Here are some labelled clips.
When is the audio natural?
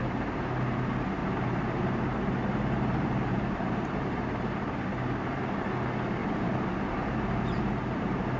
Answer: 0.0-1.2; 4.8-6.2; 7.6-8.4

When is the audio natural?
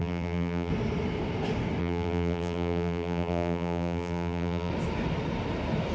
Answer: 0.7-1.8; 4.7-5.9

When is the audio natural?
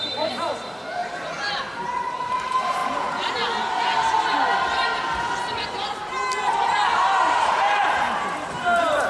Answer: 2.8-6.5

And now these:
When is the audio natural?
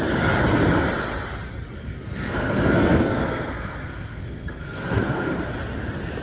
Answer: 0.0-1.8; 5.5-6.2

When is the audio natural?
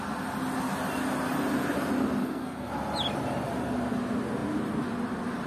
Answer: 0.0-2.2; 2.7-5.5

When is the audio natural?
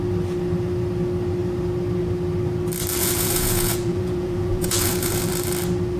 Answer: 0.0-3.0; 5.3-6.0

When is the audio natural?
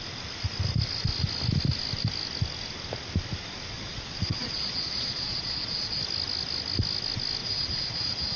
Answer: 0.0-3.7; 6.0-7.4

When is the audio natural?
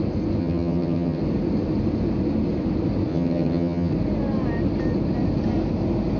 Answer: 0.0-0.4; 1.2-3.1; 3.9-6.2